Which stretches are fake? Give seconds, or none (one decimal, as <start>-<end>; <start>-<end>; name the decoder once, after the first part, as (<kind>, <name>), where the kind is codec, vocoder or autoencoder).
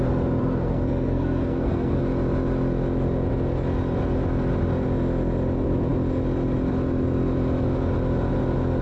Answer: 0.4-2.0 (codec, SNAC)